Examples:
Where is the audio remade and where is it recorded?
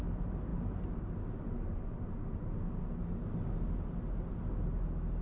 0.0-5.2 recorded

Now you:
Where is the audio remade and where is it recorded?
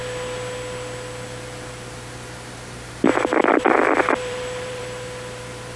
0.0-3.1 recorded; 3.1-4.8 remade; 4.8-5.8 recorded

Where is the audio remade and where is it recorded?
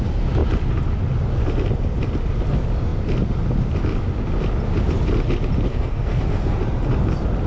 0.0-5.7 recorded; 5.7-6.6 remade; 6.6-7.5 recorded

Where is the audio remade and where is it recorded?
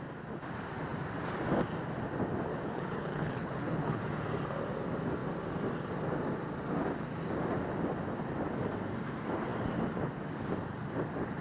0.0-2.5 recorded; 2.5-4.0 remade; 4.0-11.4 recorded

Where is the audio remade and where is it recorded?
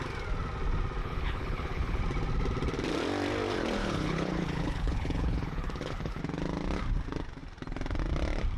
0.0-1.0 recorded; 1.0-2.0 remade; 2.0-3.8 recorded; 3.8-6.2 remade; 6.2-8.6 recorded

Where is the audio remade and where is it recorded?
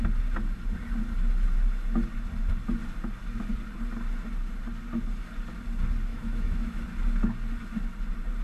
0.0-6.1 recorded; 6.1-6.8 remade; 6.8-8.4 recorded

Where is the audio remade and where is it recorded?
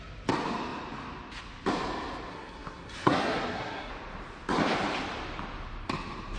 0.0-2.3 recorded; 2.3-3.9 remade; 3.9-6.4 recorded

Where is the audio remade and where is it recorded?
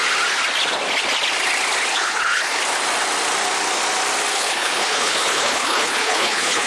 0.0-1.9 recorded; 1.9-2.6 remade; 2.6-4.3 recorded; 4.3-6.7 remade